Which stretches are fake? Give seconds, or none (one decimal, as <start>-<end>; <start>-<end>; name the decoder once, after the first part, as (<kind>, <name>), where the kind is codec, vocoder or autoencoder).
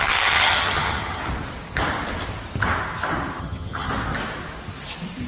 0.0-1.2 (vocoder, HiFi-GAN); 3.4-3.9